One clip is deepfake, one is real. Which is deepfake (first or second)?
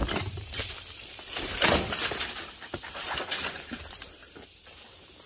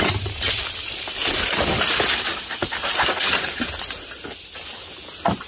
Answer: first